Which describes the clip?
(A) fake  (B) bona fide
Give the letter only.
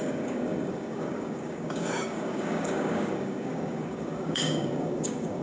A